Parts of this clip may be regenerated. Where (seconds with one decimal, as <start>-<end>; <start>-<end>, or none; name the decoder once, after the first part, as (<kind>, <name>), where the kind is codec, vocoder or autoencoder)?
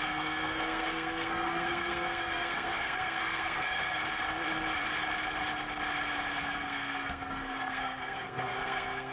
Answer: 0.0-4.0 (codec, SNAC); 6.4-9.1